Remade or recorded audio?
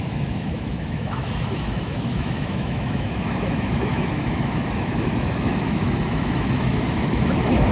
remade